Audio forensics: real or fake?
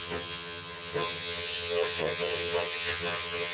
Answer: fake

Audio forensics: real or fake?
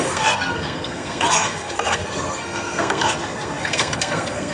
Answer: fake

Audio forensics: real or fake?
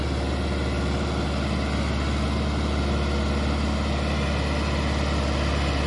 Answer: real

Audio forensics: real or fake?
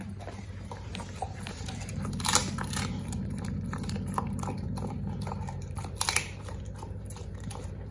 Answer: fake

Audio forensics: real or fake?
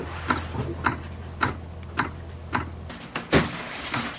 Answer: fake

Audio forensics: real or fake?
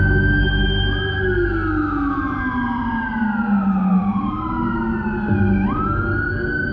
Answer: real